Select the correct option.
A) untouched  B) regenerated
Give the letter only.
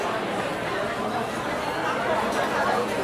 A